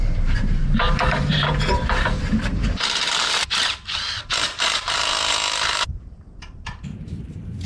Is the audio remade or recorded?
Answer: remade